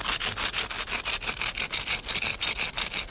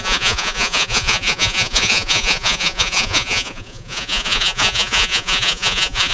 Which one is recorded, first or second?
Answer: first